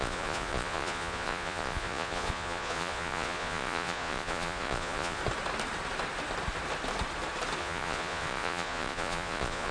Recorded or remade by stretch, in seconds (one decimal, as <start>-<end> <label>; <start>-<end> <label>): 0.0-5.2 remade; 5.2-7.6 recorded; 7.6-9.7 remade